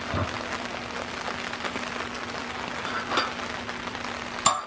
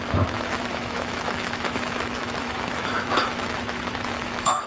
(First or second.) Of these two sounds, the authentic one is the first